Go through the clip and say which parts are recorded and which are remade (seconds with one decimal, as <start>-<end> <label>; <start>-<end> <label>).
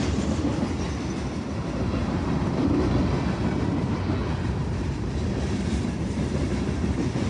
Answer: 0.0-2.0 recorded; 2.0-3.0 remade; 3.0-4.2 recorded; 4.2-6.7 remade; 6.7-7.3 recorded